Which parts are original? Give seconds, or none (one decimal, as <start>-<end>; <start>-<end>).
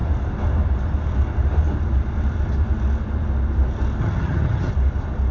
0.0-4.0; 4.7-5.3